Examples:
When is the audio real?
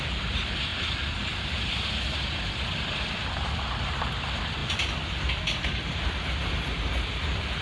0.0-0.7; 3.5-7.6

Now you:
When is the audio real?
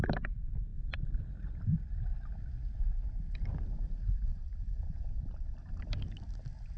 0.0-4.3; 5.8-6.8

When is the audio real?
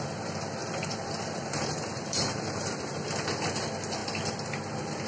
0.0-0.6; 2.9-5.1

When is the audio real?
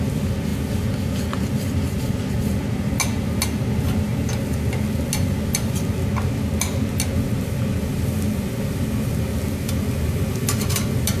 0.0-11.2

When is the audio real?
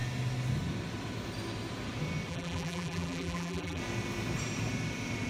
0.0-2.3; 3.8-5.3